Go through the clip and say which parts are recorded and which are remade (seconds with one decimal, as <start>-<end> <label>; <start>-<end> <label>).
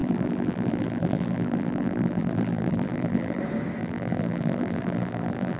0.0-3.4 remade; 3.4-3.8 recorded; 3.8-5.6 remade